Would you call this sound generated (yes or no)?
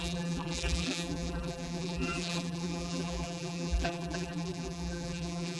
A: yes